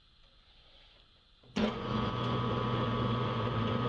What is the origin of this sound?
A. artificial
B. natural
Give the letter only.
A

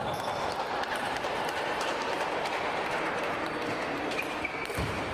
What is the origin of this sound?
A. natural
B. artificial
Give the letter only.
A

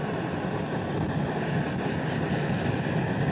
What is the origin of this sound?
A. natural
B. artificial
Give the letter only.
A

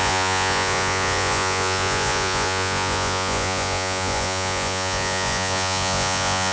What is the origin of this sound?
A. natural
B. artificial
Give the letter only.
B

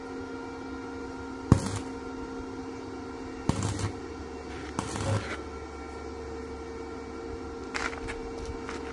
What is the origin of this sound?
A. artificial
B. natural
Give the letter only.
B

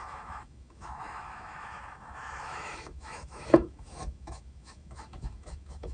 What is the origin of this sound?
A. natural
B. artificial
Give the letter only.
B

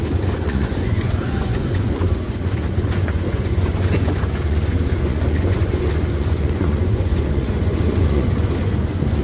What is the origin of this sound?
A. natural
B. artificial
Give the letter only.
B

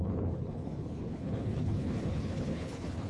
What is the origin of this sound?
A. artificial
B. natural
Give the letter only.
A